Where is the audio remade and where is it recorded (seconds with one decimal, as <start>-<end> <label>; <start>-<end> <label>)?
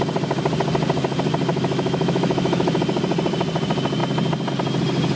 0.0-1.5 recorded; 1.5-2.8 remade; 2.8-5.2 recorded